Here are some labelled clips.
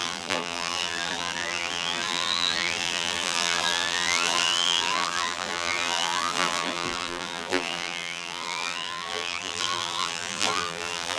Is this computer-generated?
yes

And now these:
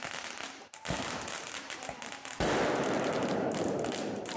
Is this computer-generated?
no